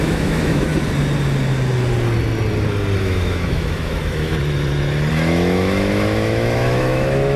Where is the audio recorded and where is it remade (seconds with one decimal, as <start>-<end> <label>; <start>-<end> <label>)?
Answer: 0.0-0.7 remade; 0.7-3.0 recorded; 3.0-4.3 remade; 4.3-5.1 recorded; 5.1-7.4 remade